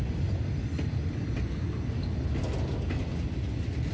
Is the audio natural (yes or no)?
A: yes